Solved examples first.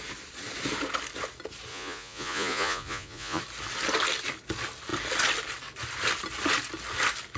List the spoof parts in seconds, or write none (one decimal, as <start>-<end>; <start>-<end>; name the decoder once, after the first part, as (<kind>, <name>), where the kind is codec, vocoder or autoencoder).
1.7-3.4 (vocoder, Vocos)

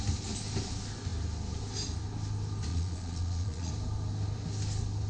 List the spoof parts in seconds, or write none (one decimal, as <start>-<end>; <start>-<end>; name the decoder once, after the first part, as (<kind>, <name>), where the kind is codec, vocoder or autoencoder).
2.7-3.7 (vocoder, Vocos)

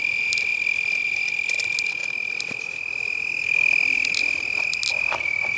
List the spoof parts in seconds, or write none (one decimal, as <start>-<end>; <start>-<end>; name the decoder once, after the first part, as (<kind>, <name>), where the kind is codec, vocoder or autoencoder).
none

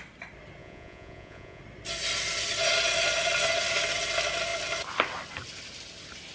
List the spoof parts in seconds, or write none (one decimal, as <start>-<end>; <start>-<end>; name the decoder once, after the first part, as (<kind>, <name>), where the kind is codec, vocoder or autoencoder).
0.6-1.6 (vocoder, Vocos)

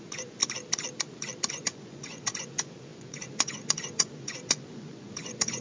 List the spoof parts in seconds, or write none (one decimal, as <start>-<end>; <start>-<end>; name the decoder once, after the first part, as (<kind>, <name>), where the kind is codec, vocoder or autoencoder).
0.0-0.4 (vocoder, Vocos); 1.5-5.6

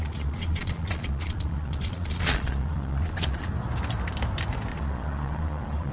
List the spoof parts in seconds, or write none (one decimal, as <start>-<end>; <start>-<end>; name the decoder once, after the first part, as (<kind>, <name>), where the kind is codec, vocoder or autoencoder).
0.0-3.5 (vocoder, Vocos); 4.7-5.9